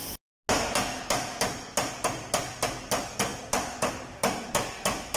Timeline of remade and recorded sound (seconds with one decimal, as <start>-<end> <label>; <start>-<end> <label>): 0.0-5.2 recorded